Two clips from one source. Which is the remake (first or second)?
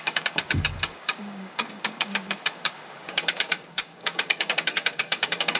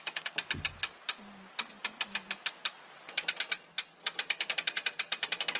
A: first